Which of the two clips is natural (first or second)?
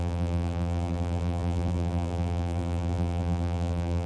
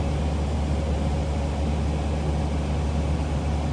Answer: second